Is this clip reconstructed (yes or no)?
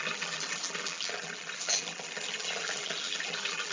yes